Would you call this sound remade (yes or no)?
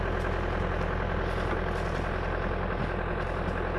no